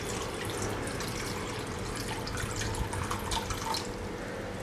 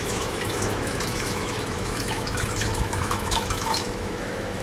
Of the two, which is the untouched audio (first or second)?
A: first